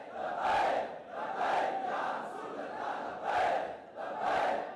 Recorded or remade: recorded